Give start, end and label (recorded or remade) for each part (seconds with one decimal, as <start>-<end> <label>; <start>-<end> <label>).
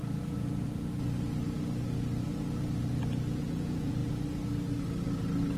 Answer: 0.0-3.4 recorded; 3.4-4.0 remade; 4.0-5.6 recorded